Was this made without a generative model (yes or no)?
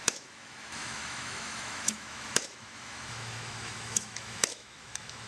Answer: no